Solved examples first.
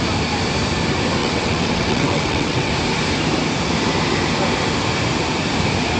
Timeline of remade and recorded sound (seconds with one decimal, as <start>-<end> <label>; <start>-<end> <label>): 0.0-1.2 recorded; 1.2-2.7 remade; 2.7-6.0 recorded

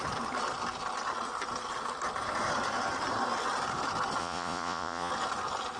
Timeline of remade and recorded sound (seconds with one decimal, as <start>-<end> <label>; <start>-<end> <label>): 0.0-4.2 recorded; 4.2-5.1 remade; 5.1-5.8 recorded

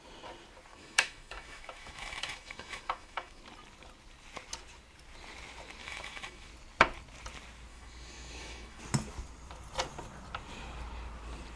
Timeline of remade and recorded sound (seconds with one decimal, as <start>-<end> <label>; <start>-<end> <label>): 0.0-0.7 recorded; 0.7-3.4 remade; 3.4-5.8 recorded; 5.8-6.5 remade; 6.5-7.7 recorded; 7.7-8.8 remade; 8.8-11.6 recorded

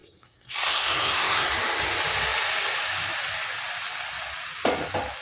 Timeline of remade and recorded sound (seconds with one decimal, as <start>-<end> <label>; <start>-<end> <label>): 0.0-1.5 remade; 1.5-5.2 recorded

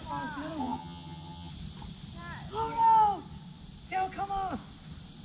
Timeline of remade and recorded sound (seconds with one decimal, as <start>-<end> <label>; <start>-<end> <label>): 0.0-0.6 recorded; 0.6-1.5 remade; 1.5-5.2 recorded